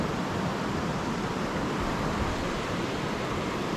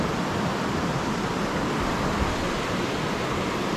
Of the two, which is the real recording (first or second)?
second